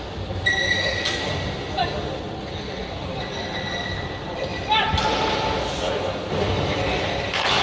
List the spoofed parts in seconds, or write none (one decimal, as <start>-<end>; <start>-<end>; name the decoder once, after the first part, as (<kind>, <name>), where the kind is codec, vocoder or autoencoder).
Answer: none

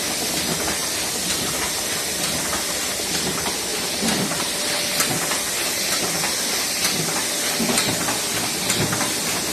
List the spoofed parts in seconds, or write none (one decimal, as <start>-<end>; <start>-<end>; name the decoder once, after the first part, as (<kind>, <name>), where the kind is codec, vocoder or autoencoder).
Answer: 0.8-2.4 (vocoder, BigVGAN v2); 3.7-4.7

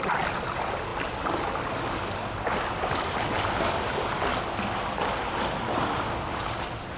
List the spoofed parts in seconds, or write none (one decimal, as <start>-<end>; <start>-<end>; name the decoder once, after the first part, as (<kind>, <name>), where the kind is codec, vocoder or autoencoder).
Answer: none

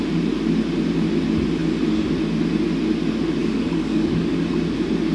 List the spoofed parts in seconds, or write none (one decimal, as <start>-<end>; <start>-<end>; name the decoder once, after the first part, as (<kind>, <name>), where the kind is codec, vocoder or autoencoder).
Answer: 3.4-4.5 (codec, DAC)

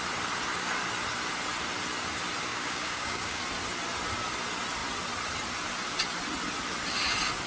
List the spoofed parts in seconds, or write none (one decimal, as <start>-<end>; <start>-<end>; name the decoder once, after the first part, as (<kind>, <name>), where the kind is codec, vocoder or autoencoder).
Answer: 2.5-3.4 (codec, DAC)